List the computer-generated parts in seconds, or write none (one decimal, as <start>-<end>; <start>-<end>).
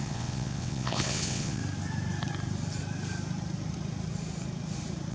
0.0-1.6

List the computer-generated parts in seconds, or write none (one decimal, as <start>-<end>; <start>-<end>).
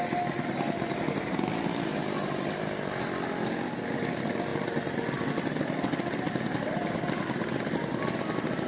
none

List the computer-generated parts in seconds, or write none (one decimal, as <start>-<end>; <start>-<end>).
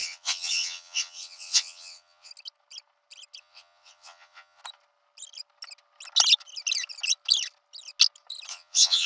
0.0-2.3; 3.4-4.6; 8.5-9.1